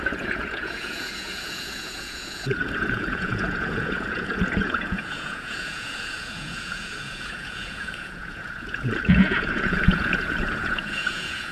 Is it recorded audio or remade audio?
remade